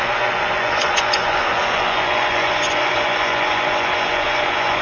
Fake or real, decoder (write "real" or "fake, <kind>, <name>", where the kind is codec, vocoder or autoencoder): fake, vocoder, Vocos